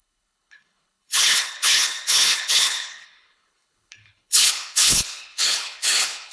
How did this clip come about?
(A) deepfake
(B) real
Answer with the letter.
A